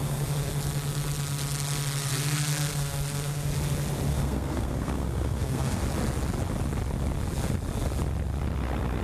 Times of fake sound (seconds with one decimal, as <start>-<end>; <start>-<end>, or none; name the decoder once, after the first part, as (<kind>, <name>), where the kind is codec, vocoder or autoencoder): 0.0-0.5 (codec, SNAC); 2.0-3.5; 4.1-5.8